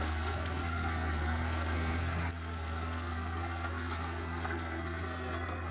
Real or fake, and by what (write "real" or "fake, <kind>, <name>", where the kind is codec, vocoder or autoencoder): fake, codec, SNAC